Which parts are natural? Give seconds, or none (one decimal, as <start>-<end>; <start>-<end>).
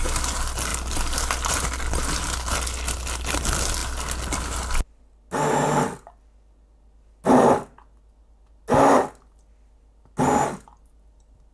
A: 0.0-11.5